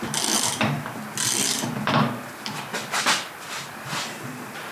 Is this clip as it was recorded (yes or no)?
no